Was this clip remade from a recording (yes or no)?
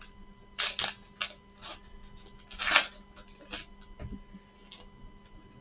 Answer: no